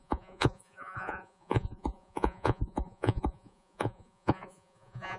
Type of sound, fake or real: fake